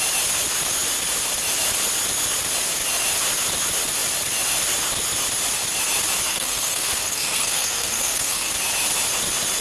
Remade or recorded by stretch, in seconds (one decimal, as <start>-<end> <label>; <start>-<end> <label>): 0.0-6.3 recorded; 6.3-8.5 remade; 8.5-9.6 recorded